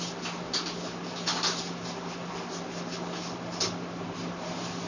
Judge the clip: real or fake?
real